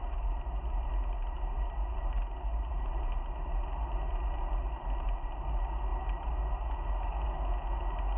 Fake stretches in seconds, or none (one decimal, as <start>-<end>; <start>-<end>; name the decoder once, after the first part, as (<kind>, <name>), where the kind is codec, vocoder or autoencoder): none